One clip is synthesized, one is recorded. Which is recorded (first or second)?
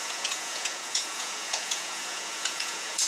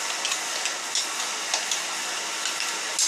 second